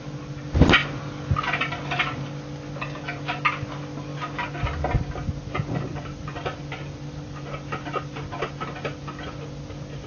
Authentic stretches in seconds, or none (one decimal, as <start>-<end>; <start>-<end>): 0.0-10.1